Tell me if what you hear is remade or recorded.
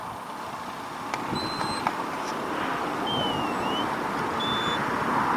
recorded